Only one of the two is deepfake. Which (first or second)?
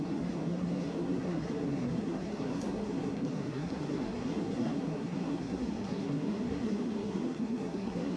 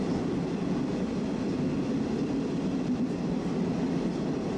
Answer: first